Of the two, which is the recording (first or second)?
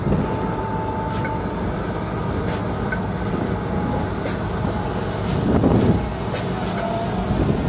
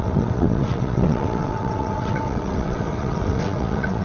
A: first